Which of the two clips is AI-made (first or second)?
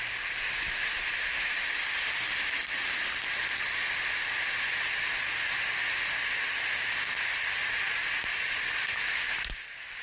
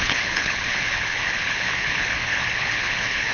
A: second